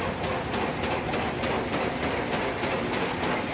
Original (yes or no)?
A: yes